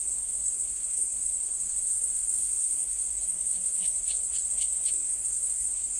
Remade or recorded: remade